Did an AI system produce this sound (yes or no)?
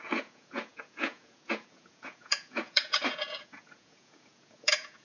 yes